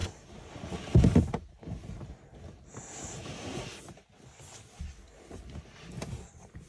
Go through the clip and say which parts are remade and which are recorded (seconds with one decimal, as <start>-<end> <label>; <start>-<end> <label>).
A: 0.0-6.7 recorded